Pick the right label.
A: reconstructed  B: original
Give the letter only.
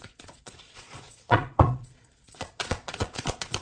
A